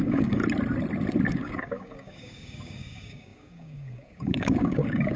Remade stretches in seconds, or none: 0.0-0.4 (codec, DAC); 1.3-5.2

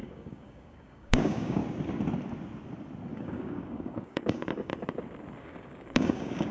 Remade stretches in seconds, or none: 0.0-1.6 (codec, DAC); 3.1-4.7; 5.4-6.5

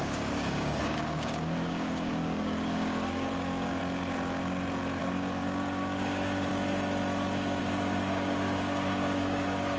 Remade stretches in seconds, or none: 0.0-3.8 (codec, DAC); 5.0-6.5; 7.6-9.8

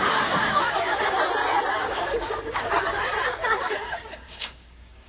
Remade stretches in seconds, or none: 0.0-0.9 (codec, DAC); 1.7-3.1; 3.6-5.1